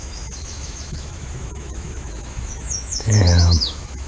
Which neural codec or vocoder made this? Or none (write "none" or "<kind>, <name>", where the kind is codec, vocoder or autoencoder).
autoencoder, DAC-VAE